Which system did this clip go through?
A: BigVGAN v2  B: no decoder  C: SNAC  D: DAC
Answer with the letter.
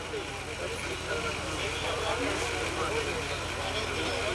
B